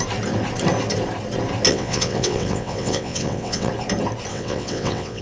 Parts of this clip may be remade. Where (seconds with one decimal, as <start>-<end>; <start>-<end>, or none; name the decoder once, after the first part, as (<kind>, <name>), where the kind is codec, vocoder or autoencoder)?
1.7-3.7 (vocoder, WaveNeXt); 4.3-5.2